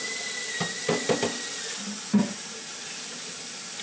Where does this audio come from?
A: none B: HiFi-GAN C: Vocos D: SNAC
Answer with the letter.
A